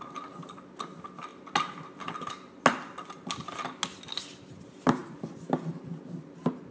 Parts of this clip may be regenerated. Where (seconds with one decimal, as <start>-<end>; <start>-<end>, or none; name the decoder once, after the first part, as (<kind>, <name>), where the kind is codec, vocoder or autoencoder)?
none